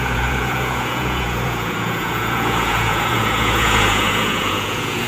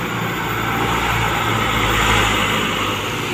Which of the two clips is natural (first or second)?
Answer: second